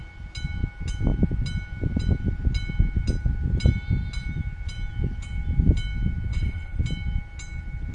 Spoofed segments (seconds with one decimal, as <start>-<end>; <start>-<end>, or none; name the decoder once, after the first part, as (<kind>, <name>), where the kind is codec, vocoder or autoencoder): 6.3-6.8 (codec, HILCodec)